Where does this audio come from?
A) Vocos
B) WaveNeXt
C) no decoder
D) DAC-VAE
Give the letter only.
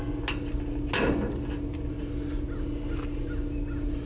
C